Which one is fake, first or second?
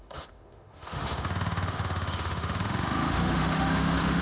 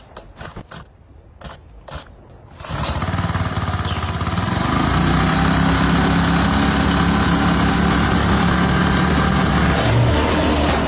first